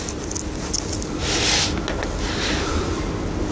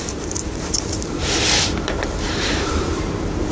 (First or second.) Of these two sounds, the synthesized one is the second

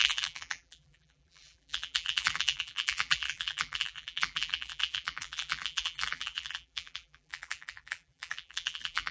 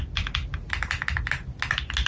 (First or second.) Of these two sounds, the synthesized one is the first